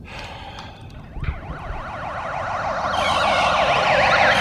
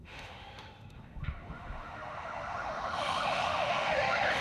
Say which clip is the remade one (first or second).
second